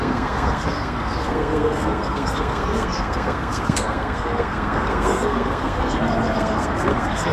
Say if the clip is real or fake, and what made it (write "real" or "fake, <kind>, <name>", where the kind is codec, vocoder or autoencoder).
fake, codec, SNAC